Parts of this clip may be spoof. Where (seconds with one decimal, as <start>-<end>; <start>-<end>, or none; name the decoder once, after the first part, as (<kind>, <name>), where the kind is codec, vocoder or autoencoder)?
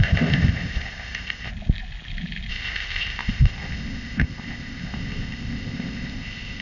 0.0-1.5 (codec, ZipCodec); 2.5-6.6